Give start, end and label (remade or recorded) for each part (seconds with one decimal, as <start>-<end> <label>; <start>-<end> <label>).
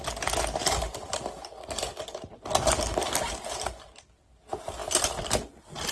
0.0-5.9 recorded